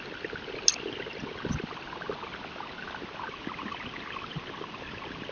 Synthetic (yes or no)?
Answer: no